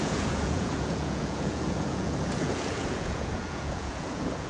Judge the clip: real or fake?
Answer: fake